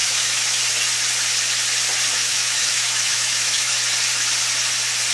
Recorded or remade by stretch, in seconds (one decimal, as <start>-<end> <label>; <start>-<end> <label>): 0.0-0.6 remade; 0.6-2.1 recorded; 2.1-3.7 remade; 3.7-5.1 recorded

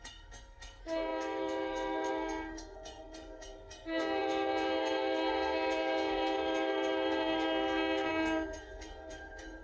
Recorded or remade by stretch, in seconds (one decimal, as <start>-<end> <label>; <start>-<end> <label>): 0.0-9.6 remade

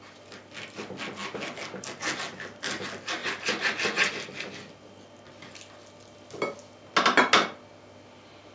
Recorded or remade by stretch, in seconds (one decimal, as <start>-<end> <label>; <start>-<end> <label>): 0.0-8.5 recorded

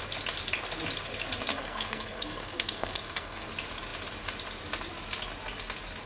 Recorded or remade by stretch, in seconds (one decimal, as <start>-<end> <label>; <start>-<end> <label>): 0.0-1.5 recorded; 1.5-3.5 remade; 3.5-6.1 recorded

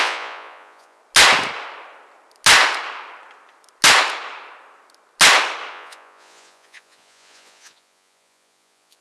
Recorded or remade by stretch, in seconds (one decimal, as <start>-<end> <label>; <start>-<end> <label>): 0.0-1.0 remade; 1.0-5.7 recorded; 5.7-9.0 remade